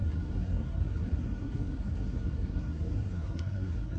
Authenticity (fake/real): fake